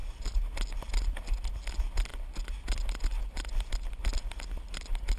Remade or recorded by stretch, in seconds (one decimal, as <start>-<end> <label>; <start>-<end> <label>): 0.0-5.2 recorded